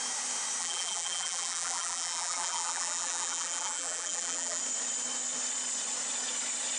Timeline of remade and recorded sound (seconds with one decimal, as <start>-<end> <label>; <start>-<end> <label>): 0.0-0.6 recorded; 0.6-4.6 remade; 4.6-6.8 recorded

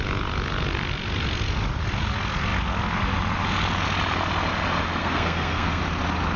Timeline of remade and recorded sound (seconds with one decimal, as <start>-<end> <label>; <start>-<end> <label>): 0.0-5.0 recorded; 5.0-5.8 remade; 5.8-6.4 recorded

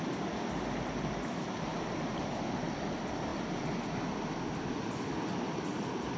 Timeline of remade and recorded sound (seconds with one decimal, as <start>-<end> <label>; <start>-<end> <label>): 0.0-6.2 recorded